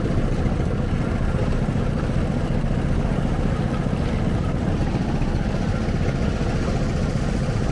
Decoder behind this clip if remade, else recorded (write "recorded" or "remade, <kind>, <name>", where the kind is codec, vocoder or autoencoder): recorded